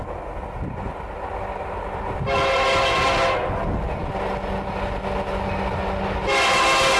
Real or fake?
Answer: real